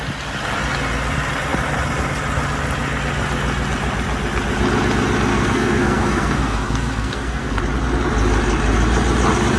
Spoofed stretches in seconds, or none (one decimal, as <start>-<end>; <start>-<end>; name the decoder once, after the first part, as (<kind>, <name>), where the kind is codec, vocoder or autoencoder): 5.3-7.6 (codec, SNAC)